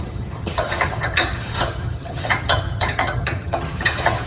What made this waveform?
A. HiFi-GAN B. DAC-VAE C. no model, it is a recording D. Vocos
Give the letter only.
A